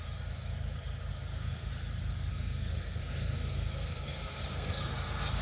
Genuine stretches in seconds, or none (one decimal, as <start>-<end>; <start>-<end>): 0.0-1.1; 1.7-2.3